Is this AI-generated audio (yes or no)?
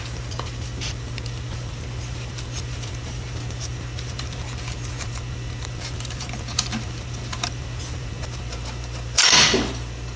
yes